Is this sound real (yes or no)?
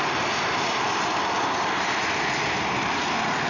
yes